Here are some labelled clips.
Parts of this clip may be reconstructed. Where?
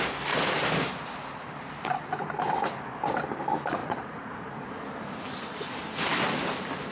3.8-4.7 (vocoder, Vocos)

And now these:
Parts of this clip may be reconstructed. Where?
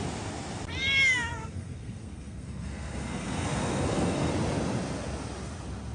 1.3-4.3 (codec, SNAC)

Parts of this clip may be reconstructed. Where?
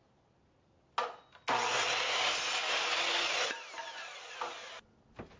none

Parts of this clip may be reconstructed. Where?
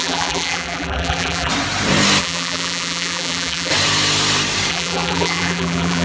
0.0-1.5 (vocoder, BigVGAN v2); 2.2-3.7; 4.7-6.0